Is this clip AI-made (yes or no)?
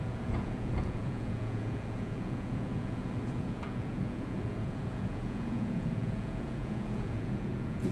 yes